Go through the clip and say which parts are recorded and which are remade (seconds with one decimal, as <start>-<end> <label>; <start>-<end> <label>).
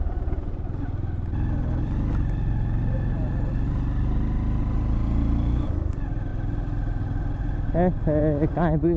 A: 0.0-9.0 recorded